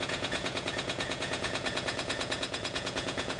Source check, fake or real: fake